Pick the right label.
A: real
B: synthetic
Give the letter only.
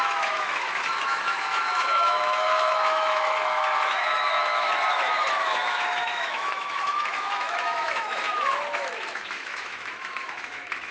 B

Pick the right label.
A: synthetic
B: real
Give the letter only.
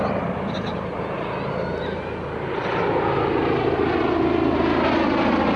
B